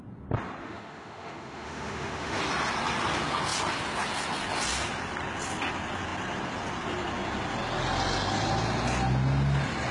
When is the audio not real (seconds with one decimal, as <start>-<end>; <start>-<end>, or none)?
0.6-2.4